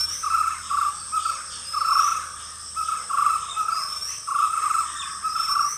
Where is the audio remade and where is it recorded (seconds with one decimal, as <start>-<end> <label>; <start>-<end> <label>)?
0.0-5.8 recorded